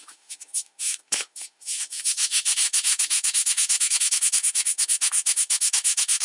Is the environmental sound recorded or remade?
remade